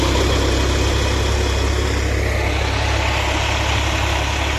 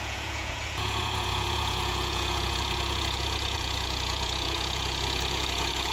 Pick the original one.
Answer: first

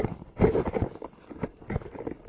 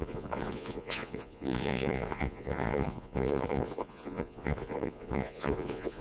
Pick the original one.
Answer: first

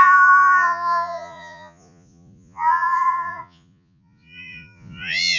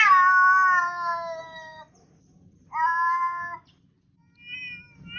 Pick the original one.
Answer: second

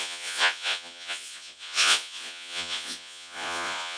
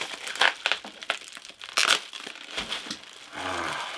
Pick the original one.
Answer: second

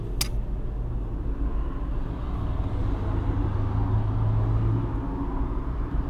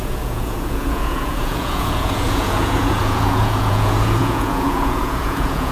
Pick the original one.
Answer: first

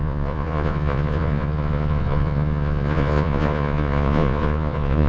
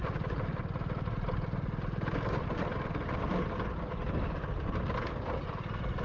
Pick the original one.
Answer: second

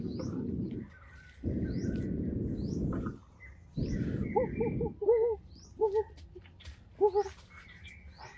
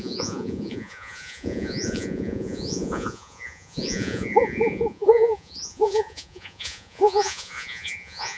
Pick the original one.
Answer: first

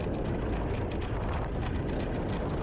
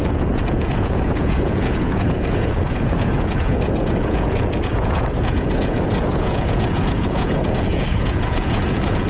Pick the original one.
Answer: first